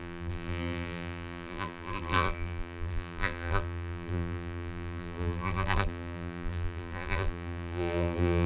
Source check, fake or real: fake